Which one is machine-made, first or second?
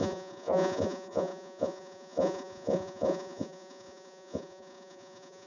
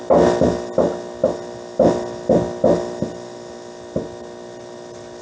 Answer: first